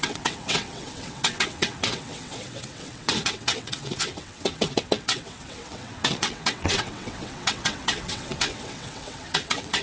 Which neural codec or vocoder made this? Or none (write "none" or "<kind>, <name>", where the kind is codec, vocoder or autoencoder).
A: vocoder, WaveNeXt